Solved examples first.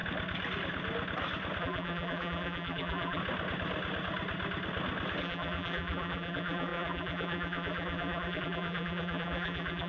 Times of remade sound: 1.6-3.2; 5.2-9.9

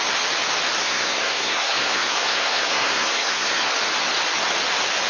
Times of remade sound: 0.8-3.7

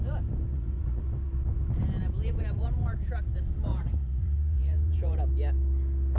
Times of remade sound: 0.5-1.0; 3.7-5.2

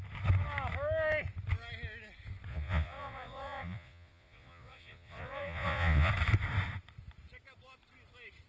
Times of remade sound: 2.5-6.1

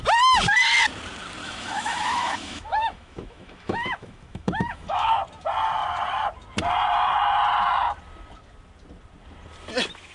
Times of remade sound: 1.4-5.1

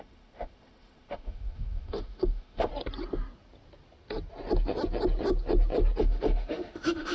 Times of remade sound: 0.0-2.7; 6.0-7.1